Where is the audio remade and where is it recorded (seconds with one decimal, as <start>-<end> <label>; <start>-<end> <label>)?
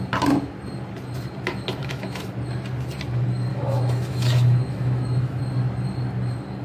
0.0-1.8 recorded; 1.8-2.3 remade; 2.3-3.5 recorded; 3.5-5.4 remade; 5.4-6.6 recorded